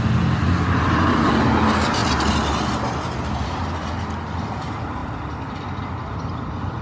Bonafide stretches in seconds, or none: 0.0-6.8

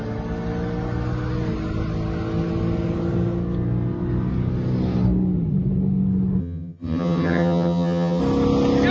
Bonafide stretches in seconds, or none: 0.0-6.4; 8.2-8.9

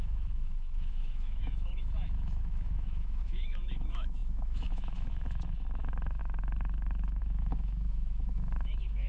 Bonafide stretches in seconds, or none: none

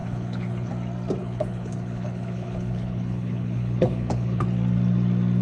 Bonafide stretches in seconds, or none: 0.7-1.2; 4.4-5.4

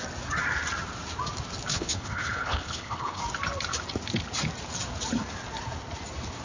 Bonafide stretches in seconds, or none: 0.0-1.7; 3.2-6.4

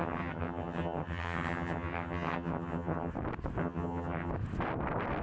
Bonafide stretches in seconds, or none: 3.1-3.6; 4.3-5.2